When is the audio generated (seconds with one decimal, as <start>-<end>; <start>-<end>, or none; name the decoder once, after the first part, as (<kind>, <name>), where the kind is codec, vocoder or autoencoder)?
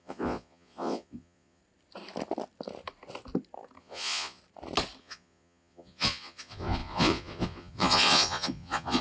0.0-1.6 (vocoder, Vocos); 3.8-4.4; 5.0-9.0